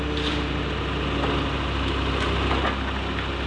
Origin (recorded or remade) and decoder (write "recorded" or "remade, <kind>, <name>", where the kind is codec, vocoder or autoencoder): recorded